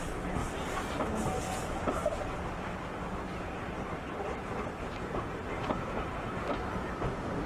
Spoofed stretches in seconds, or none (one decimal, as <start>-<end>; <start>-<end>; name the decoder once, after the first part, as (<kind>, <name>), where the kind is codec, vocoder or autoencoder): none